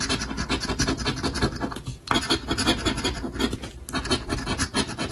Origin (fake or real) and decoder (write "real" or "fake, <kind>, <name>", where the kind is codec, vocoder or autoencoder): real